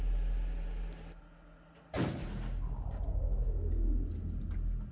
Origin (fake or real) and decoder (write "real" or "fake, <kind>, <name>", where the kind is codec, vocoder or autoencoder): real